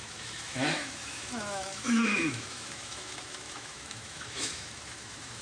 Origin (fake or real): fake